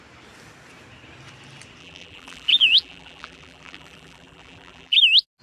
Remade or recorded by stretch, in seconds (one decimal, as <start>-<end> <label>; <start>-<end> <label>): 0.0-1.8 recorded; 1.8-5.0 remade; 5.0-5.4 recorded